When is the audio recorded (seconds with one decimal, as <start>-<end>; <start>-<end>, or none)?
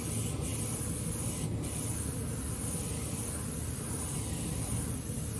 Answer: 0.0-5.4